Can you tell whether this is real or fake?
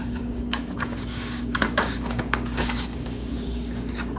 fake